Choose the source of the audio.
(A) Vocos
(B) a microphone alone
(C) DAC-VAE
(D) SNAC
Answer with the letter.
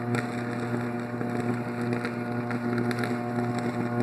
B